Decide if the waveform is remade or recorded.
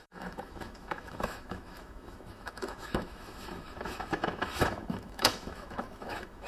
remade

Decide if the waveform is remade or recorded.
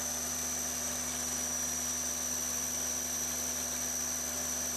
recorded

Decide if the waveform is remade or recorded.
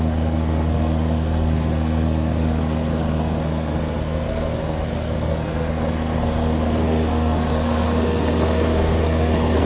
remade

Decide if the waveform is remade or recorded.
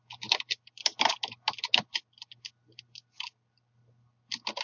recorded